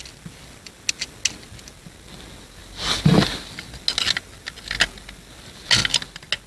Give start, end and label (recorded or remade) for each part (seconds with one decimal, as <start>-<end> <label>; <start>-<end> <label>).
0.0-6.5 recorded